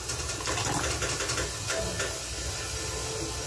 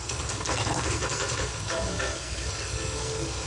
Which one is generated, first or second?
second